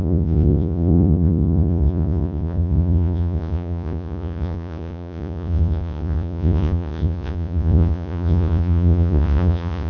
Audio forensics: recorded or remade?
remade